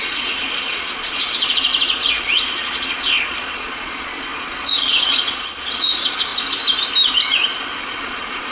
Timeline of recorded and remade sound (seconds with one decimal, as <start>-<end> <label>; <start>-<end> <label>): 0.0-1.7 remade; 1.7-2.2 recorded; 2.2-6.3 remade; 6.3-7.8 recorded; 7.8-8.5 remade